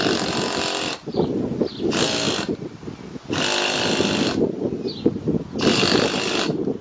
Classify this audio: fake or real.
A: real